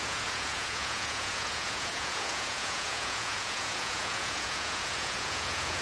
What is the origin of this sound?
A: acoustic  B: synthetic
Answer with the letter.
B